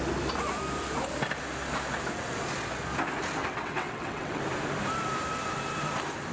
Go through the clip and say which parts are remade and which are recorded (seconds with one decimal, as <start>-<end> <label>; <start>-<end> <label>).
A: 0.0-3.4 recorded; 3.4-4.4 remade; 4.4-6.3 recorded